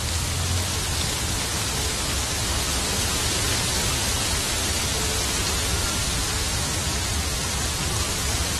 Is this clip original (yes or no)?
yes